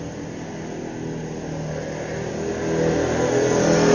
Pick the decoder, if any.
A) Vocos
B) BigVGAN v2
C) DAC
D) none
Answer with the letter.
D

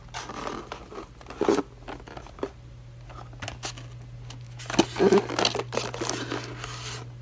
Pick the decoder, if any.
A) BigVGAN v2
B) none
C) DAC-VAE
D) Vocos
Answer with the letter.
B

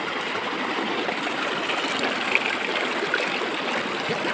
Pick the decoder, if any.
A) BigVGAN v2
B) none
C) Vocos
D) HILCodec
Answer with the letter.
B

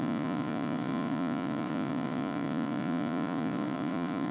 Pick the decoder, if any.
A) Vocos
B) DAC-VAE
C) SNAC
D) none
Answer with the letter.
A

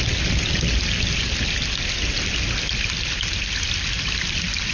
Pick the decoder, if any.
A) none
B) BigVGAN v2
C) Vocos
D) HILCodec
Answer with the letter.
A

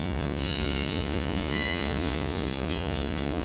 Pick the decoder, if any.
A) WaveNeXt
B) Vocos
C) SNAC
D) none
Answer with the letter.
B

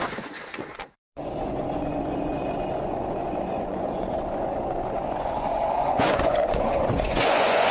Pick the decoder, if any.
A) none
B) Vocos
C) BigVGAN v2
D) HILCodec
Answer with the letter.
B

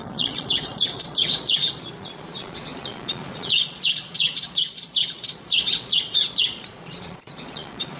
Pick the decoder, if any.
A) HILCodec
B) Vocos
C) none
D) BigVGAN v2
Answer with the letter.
B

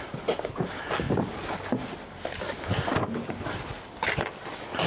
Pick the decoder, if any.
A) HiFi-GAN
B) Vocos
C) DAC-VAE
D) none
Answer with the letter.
D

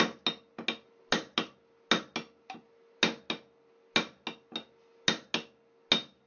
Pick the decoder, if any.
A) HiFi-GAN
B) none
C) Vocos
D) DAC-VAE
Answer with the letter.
B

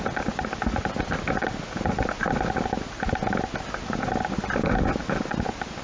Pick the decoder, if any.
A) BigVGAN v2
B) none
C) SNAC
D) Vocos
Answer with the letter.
B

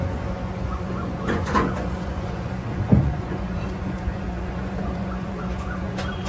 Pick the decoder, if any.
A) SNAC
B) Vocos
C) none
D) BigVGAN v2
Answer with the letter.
B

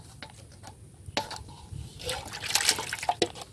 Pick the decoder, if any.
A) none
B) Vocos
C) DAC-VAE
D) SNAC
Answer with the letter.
A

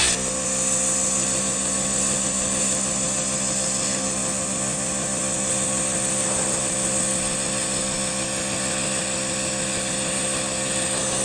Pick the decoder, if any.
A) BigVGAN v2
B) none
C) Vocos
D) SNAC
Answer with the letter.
B